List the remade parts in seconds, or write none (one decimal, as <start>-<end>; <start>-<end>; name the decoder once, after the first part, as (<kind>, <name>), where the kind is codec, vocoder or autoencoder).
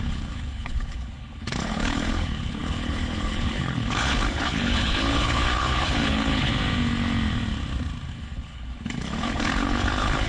0.0-6.5 (codec, HILCodec); 8.1-10.3